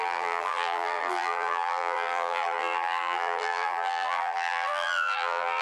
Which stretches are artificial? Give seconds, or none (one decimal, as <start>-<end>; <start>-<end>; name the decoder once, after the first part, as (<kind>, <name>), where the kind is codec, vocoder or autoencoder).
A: 0.0-5.6 (vocoder, BigVGAN v2)

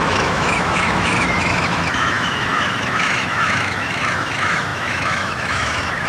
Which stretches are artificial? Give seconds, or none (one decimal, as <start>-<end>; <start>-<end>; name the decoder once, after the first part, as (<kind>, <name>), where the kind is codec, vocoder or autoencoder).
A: 0.0-6.1 (autoencoder, DAC-VAE)

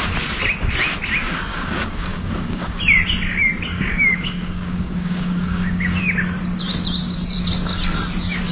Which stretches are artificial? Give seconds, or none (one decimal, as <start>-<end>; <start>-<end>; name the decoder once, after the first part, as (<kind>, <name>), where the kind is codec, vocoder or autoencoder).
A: 1.5-2.8 (codec, DAC); 3.7-6.0

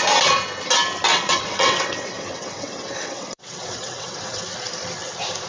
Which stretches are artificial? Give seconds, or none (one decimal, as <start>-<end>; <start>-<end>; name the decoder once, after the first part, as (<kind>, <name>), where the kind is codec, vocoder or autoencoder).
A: 1.1-4.4 (vocoder, WaveNeXt)

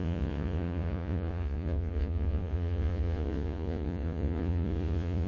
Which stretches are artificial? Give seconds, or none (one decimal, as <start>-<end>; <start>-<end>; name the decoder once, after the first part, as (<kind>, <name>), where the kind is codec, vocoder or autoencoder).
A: 0.0-5.3 (vocoder, Vocos)

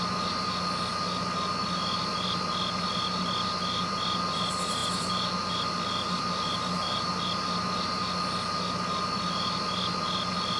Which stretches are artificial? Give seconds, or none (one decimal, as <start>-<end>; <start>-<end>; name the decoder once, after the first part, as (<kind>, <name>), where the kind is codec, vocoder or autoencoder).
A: 4.8-7.2 (vocoder, BigVGAN v2)

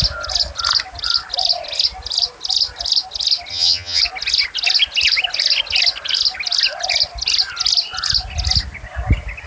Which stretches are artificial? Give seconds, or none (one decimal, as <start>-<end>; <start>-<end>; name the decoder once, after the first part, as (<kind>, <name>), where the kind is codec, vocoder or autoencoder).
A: 3.5-4.0 (vocoder, HiFi-GAN)